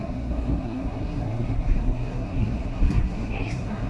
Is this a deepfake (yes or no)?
yes